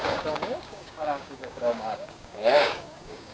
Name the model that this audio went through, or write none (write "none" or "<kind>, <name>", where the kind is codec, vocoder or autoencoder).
codec, DAC